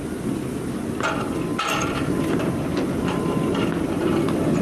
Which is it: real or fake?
real